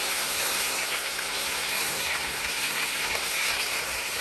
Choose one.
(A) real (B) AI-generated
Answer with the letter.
B